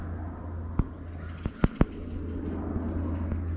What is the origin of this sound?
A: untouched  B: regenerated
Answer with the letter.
A